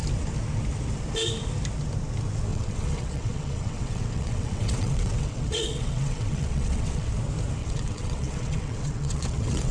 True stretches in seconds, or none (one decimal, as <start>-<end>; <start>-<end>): 0.0-2.5; 7.1-7.6

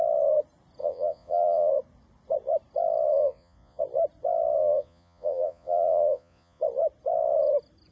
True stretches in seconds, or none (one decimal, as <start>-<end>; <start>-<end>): 0.0-0.8; 1.7-3.2; 3.8-4.6; 6.6-7.9

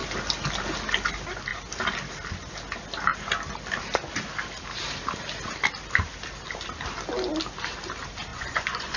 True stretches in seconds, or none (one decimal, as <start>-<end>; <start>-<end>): 0.0-8.3